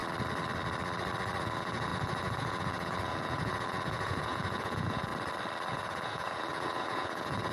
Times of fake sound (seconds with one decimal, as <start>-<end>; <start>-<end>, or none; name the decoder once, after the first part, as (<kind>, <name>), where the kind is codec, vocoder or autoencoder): 1.4-5.1 (vocoder, Vocos); 5.7-7.5